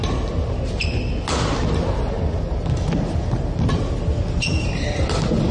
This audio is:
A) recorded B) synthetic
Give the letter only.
A